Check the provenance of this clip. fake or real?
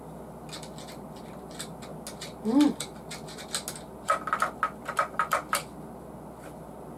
real